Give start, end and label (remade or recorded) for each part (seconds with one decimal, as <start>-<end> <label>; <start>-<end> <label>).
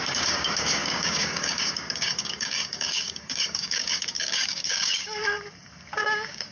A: 0.0-5.2 remade; 5.2-6.0 recorded; 6.0-6.5 remade